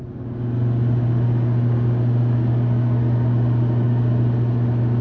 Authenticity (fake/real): real